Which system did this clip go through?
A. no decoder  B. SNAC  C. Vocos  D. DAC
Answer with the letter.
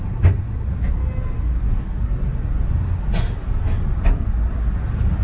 A